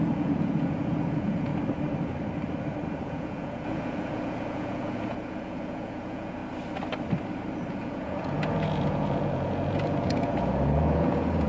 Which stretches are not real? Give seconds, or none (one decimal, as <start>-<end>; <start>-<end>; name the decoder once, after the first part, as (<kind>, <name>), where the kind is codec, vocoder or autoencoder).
0.0-1.5 (vocoder, Vocos); 3.0-6.4; 7.7-11.5